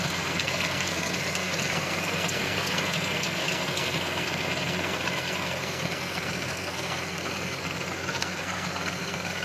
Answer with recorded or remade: remade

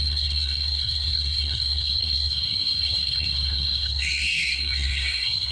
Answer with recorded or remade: remade